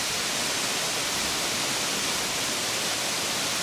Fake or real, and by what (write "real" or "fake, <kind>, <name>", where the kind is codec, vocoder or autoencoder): real